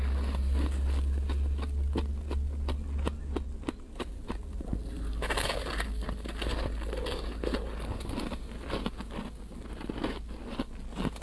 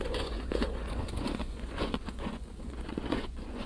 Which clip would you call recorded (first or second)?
first